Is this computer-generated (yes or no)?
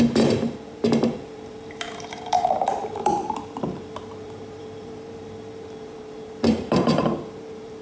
yes